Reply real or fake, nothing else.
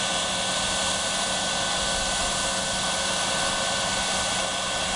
real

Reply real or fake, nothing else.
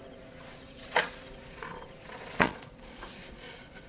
fake